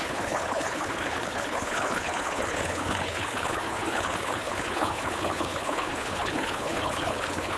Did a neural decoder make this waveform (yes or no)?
yes